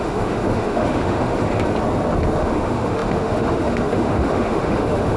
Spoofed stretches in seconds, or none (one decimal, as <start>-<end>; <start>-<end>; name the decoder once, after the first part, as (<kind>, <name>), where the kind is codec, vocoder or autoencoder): 0.0-1.7 (autoencoder, DAC-VAE); 2.4-5.2